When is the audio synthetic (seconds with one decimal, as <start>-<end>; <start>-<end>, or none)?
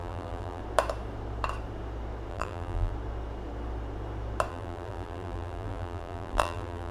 0.0-0.6; 2.3-2.9; 4.5-6.9